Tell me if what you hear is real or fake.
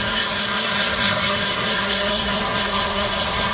fake